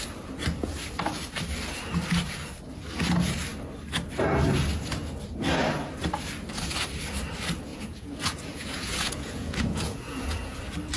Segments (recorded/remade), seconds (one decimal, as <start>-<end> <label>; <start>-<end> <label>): 0.0-7.7 recorded; 7.7-10.6 remade; 10.6-11.0 recorded